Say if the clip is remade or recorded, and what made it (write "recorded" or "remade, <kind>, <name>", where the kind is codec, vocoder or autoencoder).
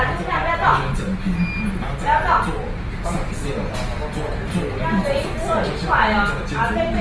recorded